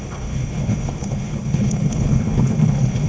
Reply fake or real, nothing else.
fake